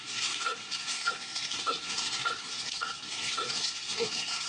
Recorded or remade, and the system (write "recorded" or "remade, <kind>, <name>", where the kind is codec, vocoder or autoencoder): remade, codec, SNAC